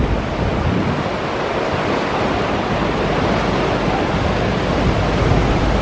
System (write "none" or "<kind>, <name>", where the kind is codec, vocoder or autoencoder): none